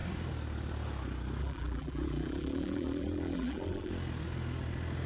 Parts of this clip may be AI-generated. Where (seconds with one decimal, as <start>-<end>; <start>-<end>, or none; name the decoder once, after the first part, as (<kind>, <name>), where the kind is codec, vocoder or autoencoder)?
1.4-3.9 (vocoder, BigVGAN v2)